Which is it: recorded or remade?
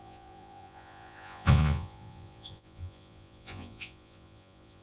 remade